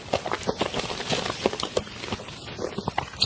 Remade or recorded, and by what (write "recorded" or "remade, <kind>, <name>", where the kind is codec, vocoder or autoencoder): recorded